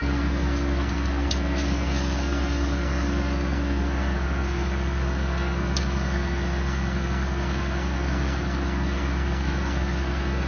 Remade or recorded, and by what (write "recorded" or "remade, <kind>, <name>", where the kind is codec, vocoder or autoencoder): remade, codec, SNAC